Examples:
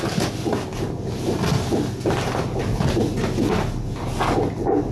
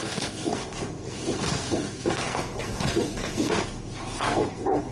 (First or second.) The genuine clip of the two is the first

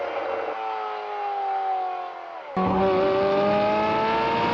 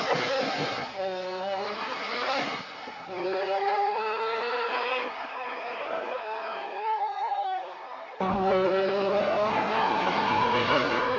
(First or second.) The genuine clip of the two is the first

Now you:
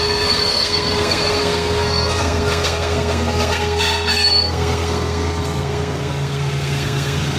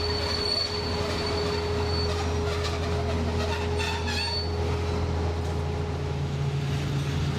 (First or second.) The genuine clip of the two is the second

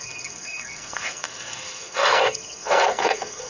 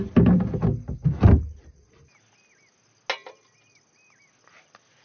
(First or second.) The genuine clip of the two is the second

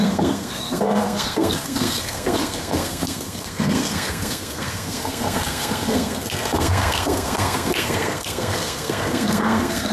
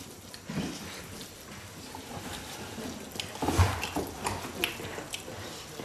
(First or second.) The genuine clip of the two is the second